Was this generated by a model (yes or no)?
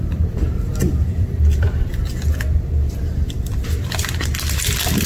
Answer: yes